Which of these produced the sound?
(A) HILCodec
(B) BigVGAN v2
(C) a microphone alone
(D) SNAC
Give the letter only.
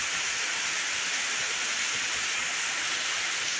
C